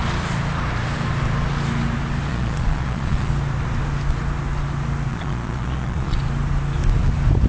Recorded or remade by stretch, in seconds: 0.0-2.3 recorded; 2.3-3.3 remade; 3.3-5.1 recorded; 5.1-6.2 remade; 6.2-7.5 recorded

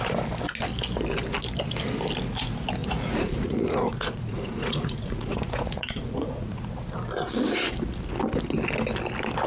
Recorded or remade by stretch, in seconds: 0.0-2.8 recorded; 2.8-6.7 remade; 6.7-9.5 recorded

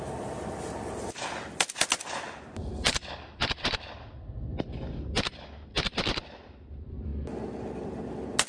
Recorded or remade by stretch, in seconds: 0.0-8.5 recorded

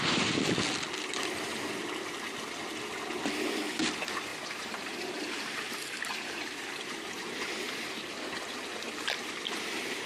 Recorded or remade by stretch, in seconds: 0.0-4.3 recorded; 4.3-7.1 remade; 7.1-10.1 recorded

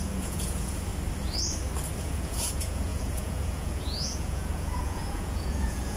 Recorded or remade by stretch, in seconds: 0.0-0.9 remade; 0.9-2.0 recorded; 2.0-6.0 remade

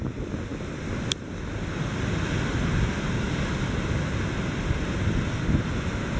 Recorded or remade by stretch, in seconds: 0.0-6.2 recorded

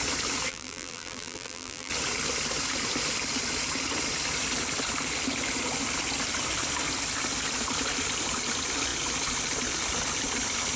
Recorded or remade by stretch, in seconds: 0.0-0.5 recorded; 0.5-1.9 remade; 1.9-10.8 recorded